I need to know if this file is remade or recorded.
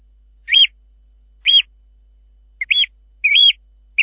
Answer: recorded